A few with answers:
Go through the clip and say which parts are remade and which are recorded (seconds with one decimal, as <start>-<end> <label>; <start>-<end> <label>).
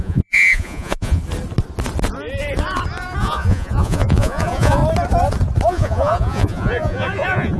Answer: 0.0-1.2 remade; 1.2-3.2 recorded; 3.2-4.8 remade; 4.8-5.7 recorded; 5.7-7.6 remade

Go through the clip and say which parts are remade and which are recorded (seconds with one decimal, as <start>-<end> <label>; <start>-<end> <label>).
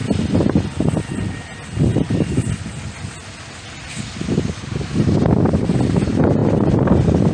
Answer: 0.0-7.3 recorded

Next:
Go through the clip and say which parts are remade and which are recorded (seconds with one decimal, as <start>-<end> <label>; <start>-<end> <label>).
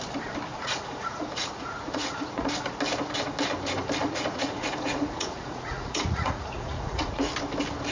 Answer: 0.0-0.5 recorded; 0.5-2.5 remade; 2.5-4.0 recorded; 4.0-7.3 remade; 7.3-7.9 recorded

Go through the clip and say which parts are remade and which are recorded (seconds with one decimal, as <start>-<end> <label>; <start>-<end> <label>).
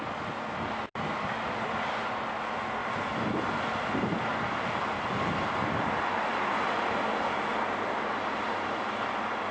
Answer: 0.0-2.8 recorded; 2.8-4.4 remade; 4.4-9.5 recorded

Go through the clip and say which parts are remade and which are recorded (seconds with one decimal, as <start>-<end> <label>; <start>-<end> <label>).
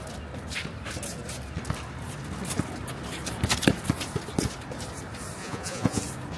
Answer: 0.0-5.4 recorded; 5.4-6.0 remade; 6.0-6.4 recorded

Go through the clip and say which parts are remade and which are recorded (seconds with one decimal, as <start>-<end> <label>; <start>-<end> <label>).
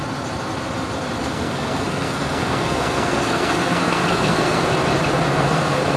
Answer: 0.0-1.2 recorded; 1.2-4.6 remade; 4.6-5.3 recorded; 5.3-6.0 remade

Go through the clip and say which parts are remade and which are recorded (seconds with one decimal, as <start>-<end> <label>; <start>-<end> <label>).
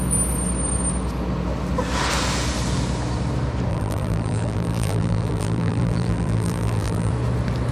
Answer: 0.0-3.7 recorded; 3.7-7.1 remade; 7.1-7.7 recorded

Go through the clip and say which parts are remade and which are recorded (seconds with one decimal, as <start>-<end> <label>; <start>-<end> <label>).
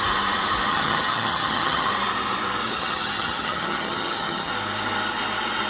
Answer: 0.0-0.7 recorded; 0.7-1.9 remade; 1.9-2.7 recorded; 2.7-4.5 remade; 4.5-5.7 recorded